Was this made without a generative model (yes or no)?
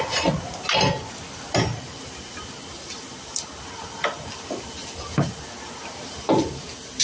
yes